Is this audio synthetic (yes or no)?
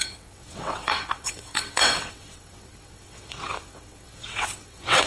yes